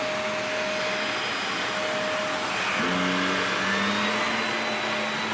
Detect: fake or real real